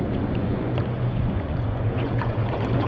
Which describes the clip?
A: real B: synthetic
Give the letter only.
B